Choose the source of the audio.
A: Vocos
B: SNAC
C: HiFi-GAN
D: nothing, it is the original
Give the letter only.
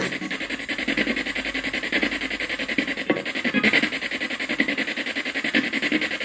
D